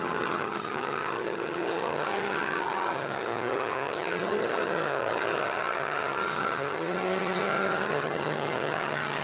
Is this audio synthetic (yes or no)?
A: yes